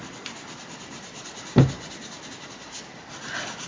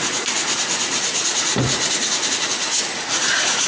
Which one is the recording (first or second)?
first